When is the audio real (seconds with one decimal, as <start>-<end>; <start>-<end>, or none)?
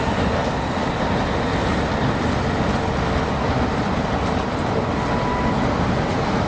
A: 0.0-6.5